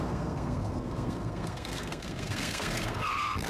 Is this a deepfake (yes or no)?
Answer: yes